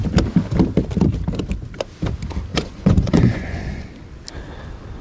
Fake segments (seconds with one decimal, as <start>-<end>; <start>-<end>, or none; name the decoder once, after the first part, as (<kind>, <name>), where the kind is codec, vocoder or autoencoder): 2.5-3.9 (vocoder, Vocos)